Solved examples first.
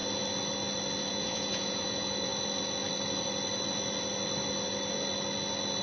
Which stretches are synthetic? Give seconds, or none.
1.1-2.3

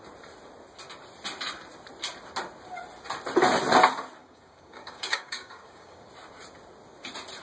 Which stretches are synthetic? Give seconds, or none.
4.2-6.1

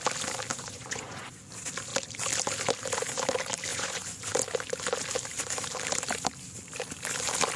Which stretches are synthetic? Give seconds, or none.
0.5-1.4; 3.7-4.3

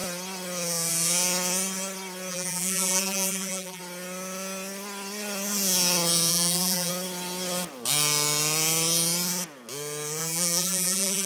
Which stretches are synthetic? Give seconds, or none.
2.3-3.8; 6.3-6.9; 10.2-11.3

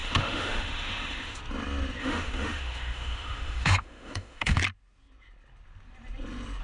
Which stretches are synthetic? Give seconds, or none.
0.0-1.4; 2.0-4.6

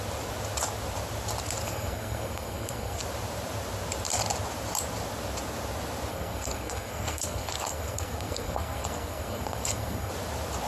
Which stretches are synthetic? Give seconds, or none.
1.6-3.0; 6.1-10.1

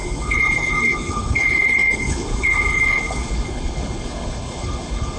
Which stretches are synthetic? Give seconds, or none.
0.0-5.2

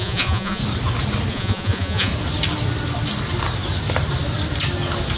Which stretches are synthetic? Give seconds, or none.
0.0-0.6; 1.3-2.1